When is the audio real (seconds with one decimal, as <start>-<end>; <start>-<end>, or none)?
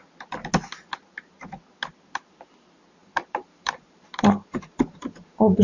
0.0-3.0